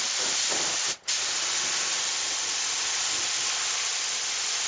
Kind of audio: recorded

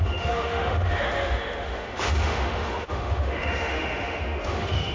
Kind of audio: remade